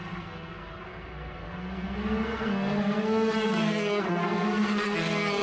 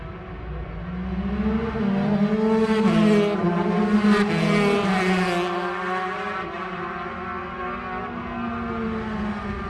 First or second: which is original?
second